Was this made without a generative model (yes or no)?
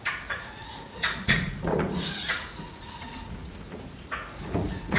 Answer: no